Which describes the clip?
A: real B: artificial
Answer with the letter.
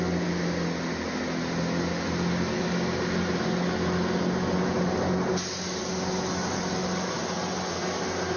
A